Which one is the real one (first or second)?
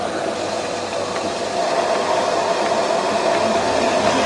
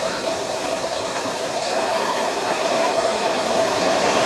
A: first